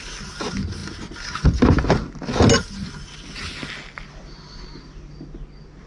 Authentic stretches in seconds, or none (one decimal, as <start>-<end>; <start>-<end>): 0.0-5.9